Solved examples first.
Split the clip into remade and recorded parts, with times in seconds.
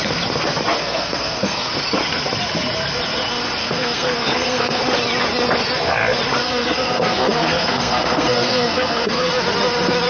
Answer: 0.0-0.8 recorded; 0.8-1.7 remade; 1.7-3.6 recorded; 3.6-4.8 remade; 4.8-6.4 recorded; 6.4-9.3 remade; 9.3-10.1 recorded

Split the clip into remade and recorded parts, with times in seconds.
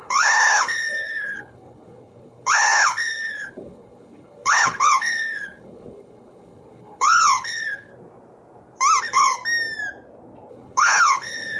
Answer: 0.0-7.9 remade; 7.9-9.0 recorded; 9.0-9.4 remade; 9.4-10.5 recorded; 10.5-11.6 remade